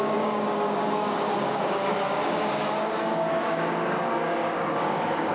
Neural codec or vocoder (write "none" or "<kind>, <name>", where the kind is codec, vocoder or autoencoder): codec, DAC